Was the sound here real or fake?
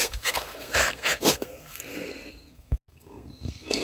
fake